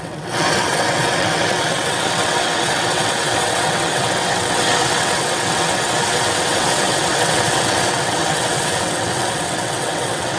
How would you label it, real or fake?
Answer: fake